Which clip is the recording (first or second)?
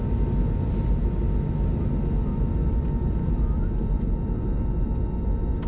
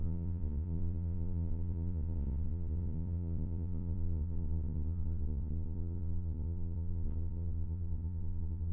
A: first